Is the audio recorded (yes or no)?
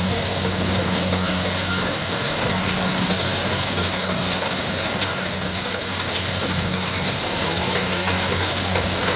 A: no